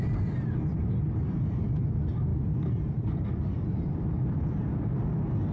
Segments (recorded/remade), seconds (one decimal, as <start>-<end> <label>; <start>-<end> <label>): 0.0-5.5 recorded